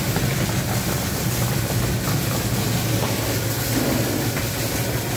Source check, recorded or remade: recorded